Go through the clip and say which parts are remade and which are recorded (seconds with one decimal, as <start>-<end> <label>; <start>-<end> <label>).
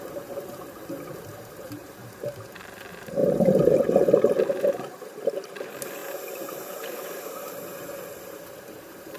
0.0-9.2 remade